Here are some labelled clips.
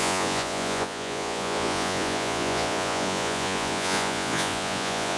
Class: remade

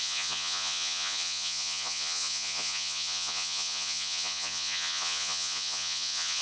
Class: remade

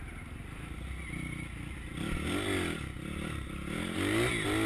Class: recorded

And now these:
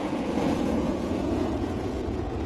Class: remade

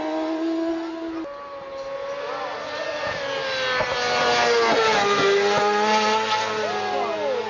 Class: recorded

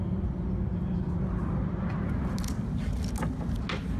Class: recorded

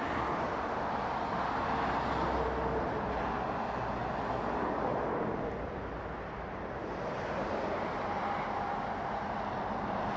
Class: recorded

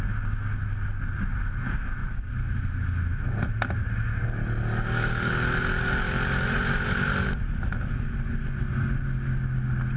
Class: recorded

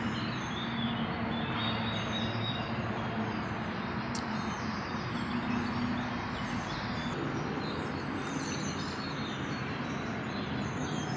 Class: recorded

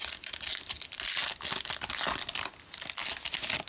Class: recorded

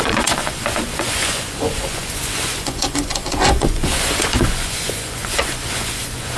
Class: remade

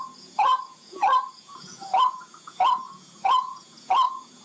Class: remade